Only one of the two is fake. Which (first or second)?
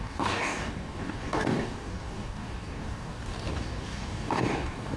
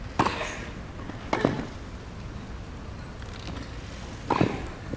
first